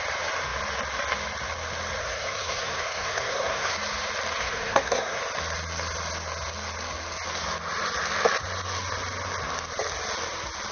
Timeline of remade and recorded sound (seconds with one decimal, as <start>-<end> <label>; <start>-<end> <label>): 0.0-2.0 recorded; 2.0-3.7 remade; 3.7-4.4 recorded; 4.4-5.2 remade; 5.2-10.7 recorded